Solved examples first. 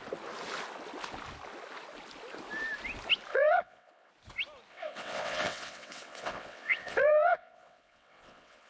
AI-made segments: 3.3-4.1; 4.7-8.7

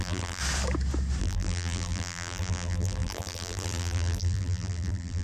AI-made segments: 0.0-0.4; 1.2-5.2

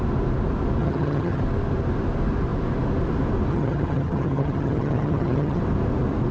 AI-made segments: 0.8-1.4; 3.5-5.6

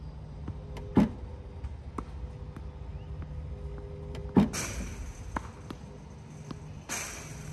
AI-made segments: none

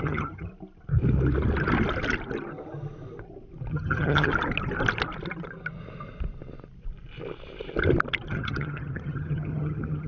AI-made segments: 0.0-0.5; 3.7-4.3; 8.3-10.1

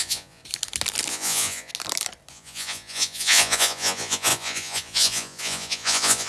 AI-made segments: 0.0-0.4; 1.1-1.7; 2.3-6.3

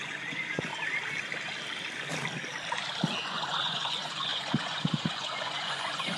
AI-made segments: 0.0-0.7; 3.2-6.2

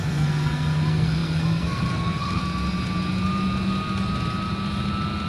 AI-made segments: 0.0-2.4